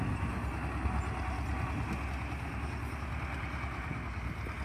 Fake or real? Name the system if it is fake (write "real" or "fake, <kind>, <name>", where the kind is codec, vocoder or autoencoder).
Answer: real